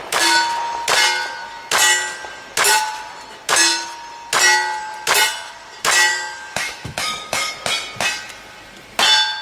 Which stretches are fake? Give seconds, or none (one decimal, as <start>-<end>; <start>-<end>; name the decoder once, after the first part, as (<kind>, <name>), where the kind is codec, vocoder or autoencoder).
6.1-7.5 (autoencoder, DAC-VAE)